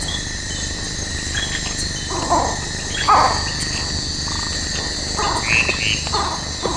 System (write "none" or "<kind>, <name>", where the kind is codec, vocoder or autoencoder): none